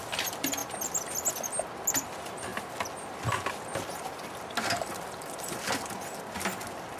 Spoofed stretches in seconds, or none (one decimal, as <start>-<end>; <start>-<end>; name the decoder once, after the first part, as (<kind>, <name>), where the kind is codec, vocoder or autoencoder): none